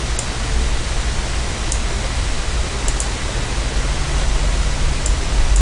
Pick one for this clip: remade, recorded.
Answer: recorded